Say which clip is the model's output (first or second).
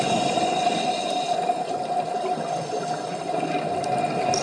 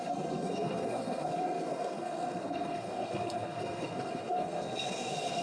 second